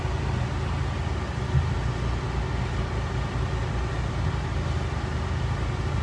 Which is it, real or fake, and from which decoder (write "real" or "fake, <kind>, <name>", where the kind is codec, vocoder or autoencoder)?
real